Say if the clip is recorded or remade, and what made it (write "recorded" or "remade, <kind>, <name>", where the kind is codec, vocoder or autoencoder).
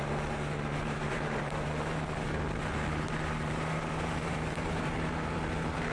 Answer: remade, vocoder, BigVGAN v2